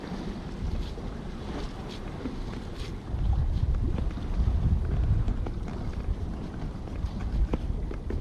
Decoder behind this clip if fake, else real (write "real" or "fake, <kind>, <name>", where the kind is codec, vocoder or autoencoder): real